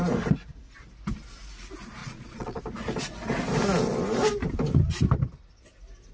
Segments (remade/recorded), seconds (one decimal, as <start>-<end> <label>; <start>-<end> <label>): 0.0-2.0 recorded; 2.0-2.6 remade; 2.6-6.1 recorded